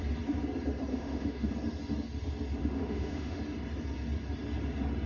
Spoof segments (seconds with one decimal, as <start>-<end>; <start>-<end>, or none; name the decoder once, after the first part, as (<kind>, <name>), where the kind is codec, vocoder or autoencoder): 0.9-1.5 (autoencoder, DAC-VAE); 2.6-3.4